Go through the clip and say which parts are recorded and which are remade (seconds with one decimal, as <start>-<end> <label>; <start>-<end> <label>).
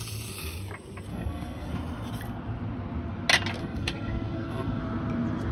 0.0-1.1 recorded; 1.1-1.7 remade; 1.7-3.6 recorded; 3.6-4.8 remade; 4.8-5.5 recorded